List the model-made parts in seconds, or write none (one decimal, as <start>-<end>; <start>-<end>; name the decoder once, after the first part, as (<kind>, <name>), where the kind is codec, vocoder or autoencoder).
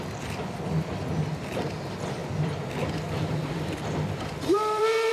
2.2-5.1 (vocoder, BigVGAN v2)